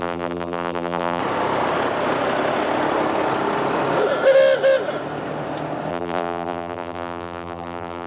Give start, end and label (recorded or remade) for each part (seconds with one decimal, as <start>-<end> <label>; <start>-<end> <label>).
0.0-1.2 remade; 1.2-5.9 recorded; 5.9-8.1 remade